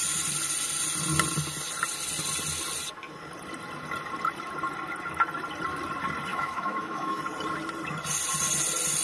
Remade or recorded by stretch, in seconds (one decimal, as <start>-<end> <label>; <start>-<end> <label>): 0.0-6.3 recorded; 6.3-7.2 remade; 7.2-9.0 recorded